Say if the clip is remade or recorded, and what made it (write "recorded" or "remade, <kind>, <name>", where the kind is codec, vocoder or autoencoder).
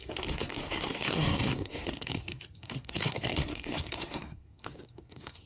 remade, codec, SNAC